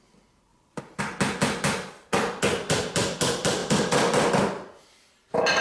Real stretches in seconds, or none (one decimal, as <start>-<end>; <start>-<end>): 0.0-0.5; 1.0-5.6